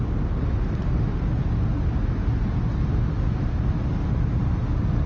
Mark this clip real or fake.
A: real